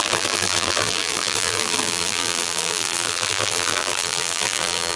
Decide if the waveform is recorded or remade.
remade